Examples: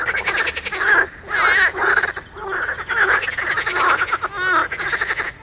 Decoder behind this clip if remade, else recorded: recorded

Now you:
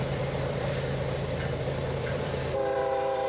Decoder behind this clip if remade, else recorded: remade, vocoder, BigVGAN v2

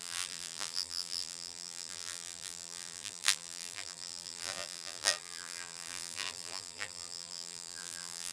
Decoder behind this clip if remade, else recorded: remade, vocoder, BigVGAN v2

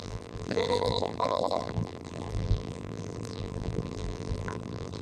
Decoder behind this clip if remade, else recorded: remade, vocoder, BigVGAN v2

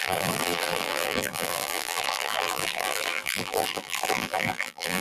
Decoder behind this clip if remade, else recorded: remade, vocoder, BigVGAN v2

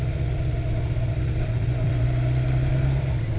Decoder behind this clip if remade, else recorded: remade, vocoder, BigVGAN v2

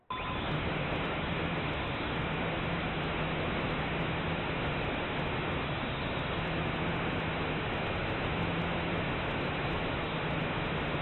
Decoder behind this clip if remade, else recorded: recorded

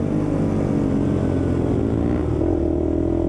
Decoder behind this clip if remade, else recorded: recorded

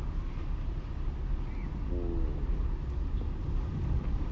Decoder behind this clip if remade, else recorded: recorded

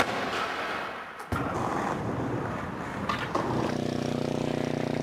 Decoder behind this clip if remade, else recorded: remade, vocoder, BigVGAN v2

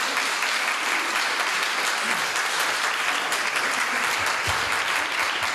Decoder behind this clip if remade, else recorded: remade, vocoder, BigVGAN v2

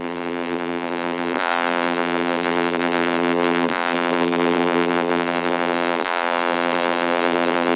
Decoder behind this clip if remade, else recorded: remade, vocoder, BigVGAN v2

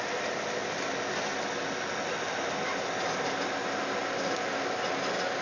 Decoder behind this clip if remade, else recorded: recorded